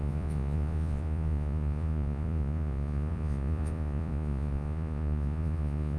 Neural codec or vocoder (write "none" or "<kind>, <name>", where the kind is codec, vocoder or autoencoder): vocoder, Vocos